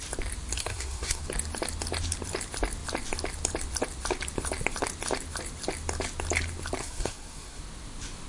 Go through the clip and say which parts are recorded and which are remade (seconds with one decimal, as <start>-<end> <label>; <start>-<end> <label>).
0.0-0.6 recorded; 0.6-1.2 remade; 1.2-6.8 recorded; 6.8-7.6 remade; 7.6-8.3 recorded